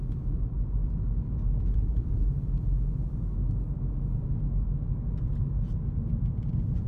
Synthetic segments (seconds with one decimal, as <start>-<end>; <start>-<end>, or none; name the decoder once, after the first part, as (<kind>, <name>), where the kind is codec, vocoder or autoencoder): none